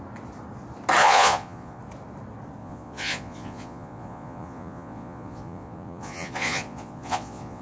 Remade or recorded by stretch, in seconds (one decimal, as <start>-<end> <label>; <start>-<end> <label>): 0.0-1.0 recorded; 1.0-1.8 remade; 1.8-2.6 recorded; 2.6-7.6 remade